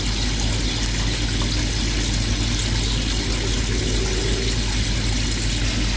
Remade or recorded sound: recorded